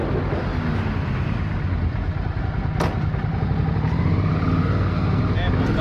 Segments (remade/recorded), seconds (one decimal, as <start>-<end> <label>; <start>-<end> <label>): 0.0-4.6 recorded; 4.6-5.2 remade; 5.2-5.8 recorded